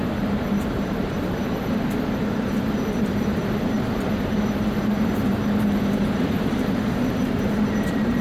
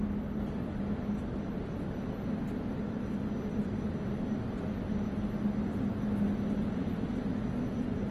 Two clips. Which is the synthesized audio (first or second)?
first